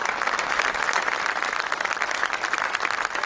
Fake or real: fake